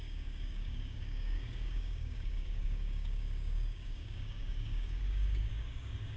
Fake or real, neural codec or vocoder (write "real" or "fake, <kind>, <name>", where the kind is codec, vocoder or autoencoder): fake, codec, DAC